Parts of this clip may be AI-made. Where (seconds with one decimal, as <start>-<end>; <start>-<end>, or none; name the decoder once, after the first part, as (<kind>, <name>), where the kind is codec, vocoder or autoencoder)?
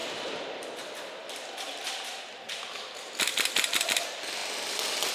0.0-5.1 (vocoder, BigVGAN v2)